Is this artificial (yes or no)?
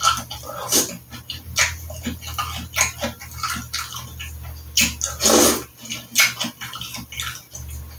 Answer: no